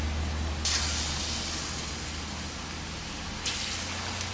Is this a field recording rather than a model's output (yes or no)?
yes